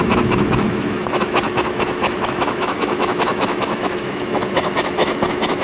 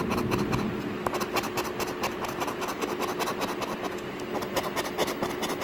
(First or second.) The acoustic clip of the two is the second